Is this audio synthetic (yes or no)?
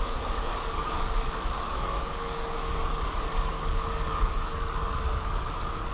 yes